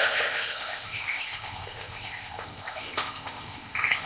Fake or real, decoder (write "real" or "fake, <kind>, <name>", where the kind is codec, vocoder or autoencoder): fake, codec, ZipCodec